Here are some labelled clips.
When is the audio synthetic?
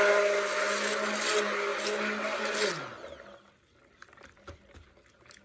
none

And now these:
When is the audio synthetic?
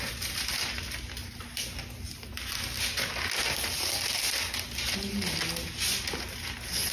none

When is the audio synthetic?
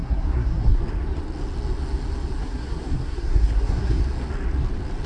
0.0-0.8 (codec, SNAC); 2.4-4.0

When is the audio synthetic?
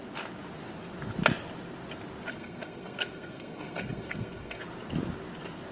2.3-4.6 (codec, SNAC)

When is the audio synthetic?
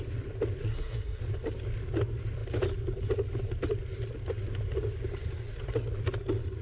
0.6-1.2 (codec, SNAC)